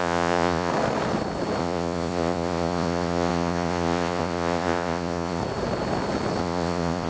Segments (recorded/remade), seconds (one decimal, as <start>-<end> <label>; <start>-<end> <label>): 0.0-0.7 remade; 0.7-1.6 recorded; 1.6-5.4 remade; 5.4-6.4 recorded; 6.4-7.1 remade